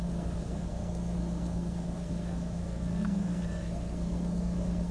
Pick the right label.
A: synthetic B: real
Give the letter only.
A